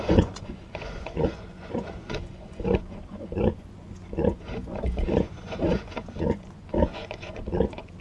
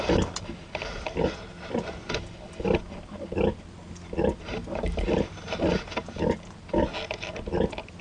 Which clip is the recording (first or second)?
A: second